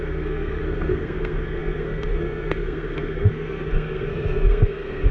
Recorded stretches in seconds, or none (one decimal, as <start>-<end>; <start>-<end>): none